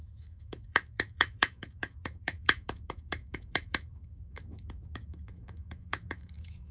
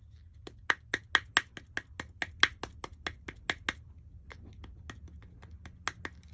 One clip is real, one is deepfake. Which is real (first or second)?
second